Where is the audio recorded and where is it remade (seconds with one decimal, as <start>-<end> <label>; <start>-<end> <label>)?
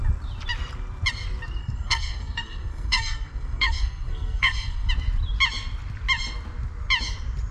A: 0.0-1.6 recorded; 1.6-4.9 remade; 4.9-7.5 recorded